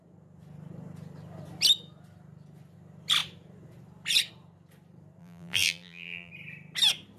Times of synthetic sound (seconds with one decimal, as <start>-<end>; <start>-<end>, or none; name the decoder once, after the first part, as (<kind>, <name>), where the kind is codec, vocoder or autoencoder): 5.2-6.3 (vocoder, BigVGAN v2)